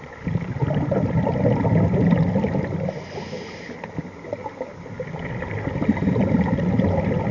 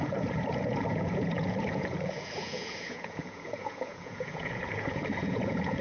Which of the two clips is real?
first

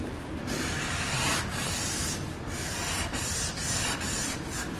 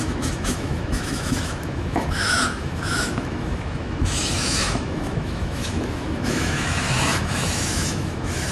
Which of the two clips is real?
first